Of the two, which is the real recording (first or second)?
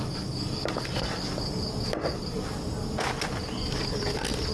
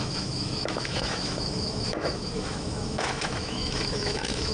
first